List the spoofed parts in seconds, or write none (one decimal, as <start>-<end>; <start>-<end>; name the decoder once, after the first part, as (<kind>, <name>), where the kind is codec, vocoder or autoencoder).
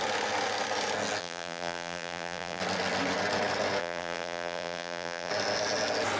1.2-2.6 (vocoder, BigVGAN v2); 3.8-5.3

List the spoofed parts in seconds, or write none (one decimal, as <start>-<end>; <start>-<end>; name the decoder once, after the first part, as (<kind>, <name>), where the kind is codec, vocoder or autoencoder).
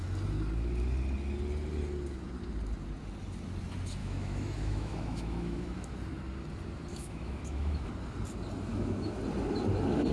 4.0-5.9 (autoencoder, DAC-VAE); 6.9-7.9; 8.7-9.2